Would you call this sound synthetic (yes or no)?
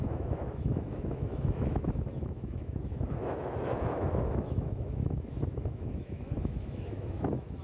yes